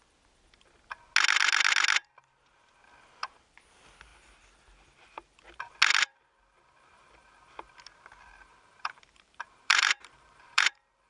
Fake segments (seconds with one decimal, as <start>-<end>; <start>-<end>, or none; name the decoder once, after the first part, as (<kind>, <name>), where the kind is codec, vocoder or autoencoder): 8.5-10.7 (vocoder, BigVGAN v2)